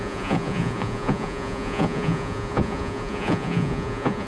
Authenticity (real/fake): fake